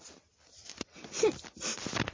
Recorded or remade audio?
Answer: remade